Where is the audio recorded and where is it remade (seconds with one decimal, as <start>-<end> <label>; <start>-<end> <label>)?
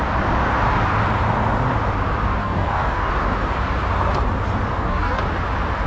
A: 0.0-2.4 recorded; 2.4-3.1 remade; 3.1-4.7 recorded; 4.7-5.2 remade; 5.2-5.9 recorded